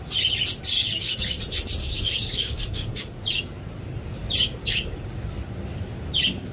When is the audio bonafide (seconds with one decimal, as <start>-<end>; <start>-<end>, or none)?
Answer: 0.0-0.8; 1.4-1.8; 3.4-4.6; 5.3-6.5